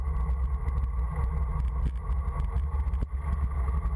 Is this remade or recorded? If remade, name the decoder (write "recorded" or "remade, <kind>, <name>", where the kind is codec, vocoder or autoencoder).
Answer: recorded